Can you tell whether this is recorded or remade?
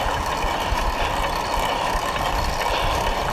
recorded